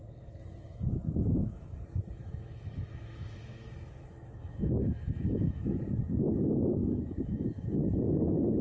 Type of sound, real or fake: fake